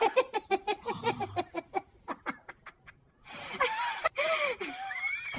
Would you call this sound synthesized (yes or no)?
no